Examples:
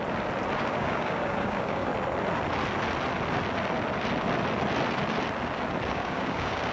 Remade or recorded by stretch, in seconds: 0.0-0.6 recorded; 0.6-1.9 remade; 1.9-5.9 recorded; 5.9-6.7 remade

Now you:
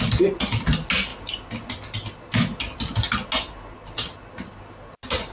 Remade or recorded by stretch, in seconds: 0.0-5.3 recorded

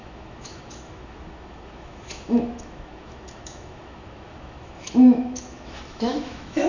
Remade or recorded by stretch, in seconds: 0.0-6.7 remade

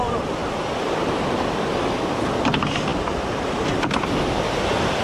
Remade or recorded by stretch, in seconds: 0.0-5.0 recorded

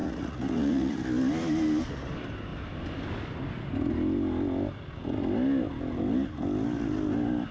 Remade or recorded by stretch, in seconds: 0.0-0.9 remade; 0.9-7.5 recorded

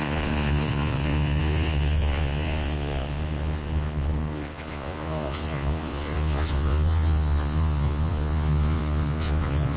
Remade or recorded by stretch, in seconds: 0.0-9.8 remade

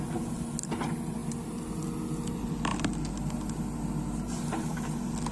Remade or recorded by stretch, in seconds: 0.0-5.3 recorded

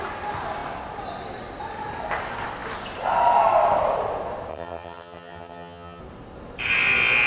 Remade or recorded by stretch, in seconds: 0.0-4.5 recorded; 4.5-6.0 remade; 6.0-7.3 recorded